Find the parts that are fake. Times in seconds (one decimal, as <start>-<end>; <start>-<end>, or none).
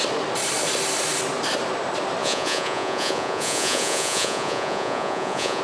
2.2-5.6